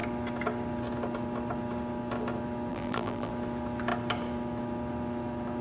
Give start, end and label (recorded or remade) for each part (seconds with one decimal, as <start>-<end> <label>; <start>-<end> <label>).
0.0-2.7 recorded; 2.7-3.3 remade; 3.3-5.6 recorded